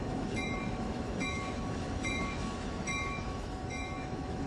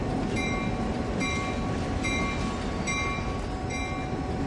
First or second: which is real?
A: second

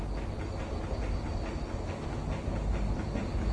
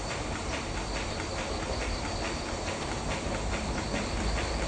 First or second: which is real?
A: first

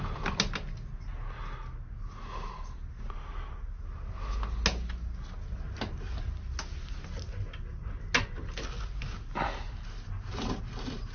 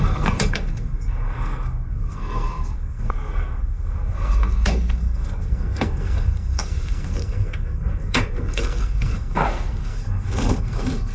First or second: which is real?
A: first